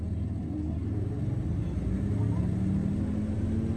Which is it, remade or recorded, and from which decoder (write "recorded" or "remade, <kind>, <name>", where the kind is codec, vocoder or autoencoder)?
recorded